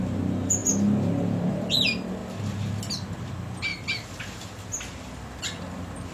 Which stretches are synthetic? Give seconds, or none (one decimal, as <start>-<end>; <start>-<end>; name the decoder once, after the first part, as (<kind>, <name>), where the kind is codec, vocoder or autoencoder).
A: none